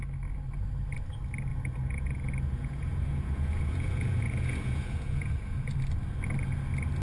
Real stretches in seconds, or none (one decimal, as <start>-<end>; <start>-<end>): 0.0-1.5; 5.7-7.0